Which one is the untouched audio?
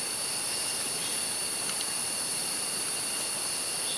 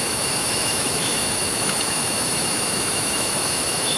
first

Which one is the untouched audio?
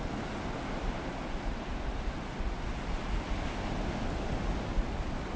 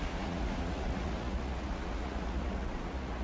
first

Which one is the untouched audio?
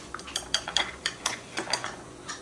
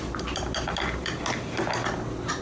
second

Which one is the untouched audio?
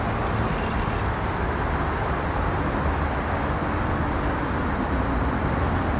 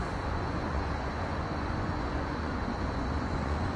first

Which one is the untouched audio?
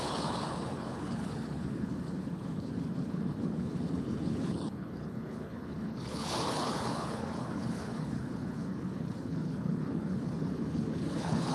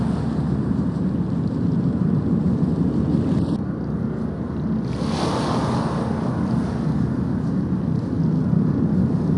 second